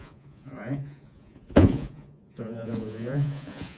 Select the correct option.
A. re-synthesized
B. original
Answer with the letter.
A